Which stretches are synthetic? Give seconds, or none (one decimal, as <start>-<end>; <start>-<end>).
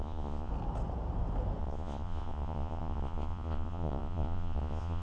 0.0-0.5; 1.6-5.0